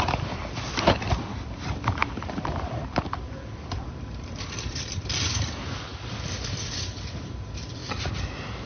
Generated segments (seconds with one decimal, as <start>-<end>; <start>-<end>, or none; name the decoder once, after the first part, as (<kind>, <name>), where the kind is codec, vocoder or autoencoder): 0.0-7.8 (vocoder, BigVGAN v2)